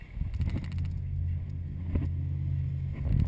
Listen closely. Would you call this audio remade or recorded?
recorded